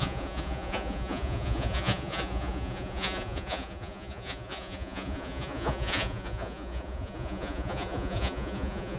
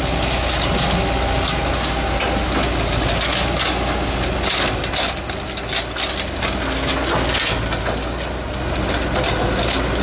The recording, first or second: second